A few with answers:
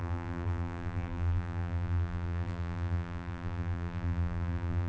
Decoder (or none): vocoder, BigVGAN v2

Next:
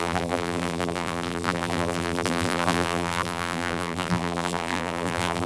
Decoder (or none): vocoder, BigVGAN v2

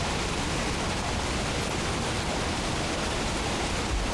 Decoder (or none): none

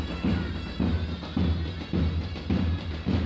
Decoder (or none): none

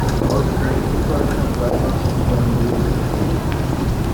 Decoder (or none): vocoder, BigVGAN v2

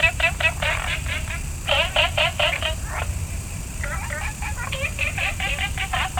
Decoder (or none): vocoder, BigVGAN v2